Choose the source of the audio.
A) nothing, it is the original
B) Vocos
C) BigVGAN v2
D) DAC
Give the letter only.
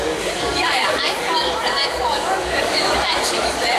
D